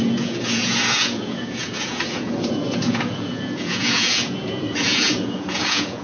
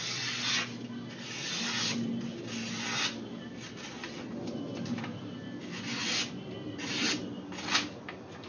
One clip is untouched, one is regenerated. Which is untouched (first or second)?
second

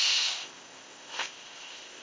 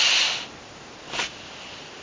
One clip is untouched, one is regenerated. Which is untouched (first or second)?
second